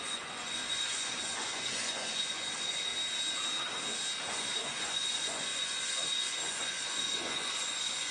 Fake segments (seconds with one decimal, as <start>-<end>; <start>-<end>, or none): 0.0-2.9; 4.3-8.1